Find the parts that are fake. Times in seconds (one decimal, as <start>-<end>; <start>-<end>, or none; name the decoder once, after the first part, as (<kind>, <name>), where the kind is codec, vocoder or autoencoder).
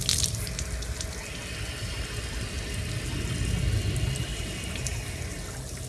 4.3-5.2 (vocoder, BigVGAN v2)